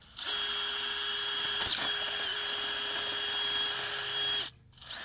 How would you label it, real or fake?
real